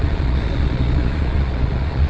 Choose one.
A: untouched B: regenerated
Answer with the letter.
B